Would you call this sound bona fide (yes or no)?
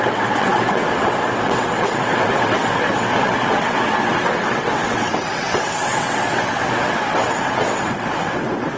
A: no